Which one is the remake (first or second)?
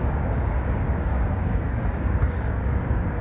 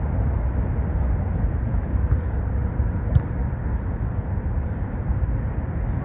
first